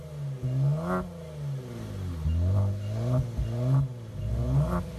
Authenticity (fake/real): real